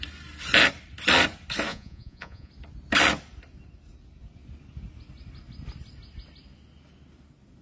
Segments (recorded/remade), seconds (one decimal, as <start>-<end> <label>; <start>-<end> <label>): 0.0-1.7 recorded; 1.7-2.5 remade; 2.5-7.6 recorded